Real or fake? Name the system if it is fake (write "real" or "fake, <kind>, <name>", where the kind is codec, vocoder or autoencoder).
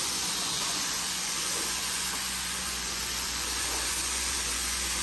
fake, vocoder, Vocos